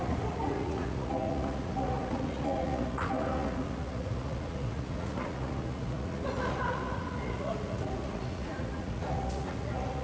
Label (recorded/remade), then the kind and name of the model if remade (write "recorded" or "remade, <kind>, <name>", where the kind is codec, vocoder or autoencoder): remade, vocoder, Vocos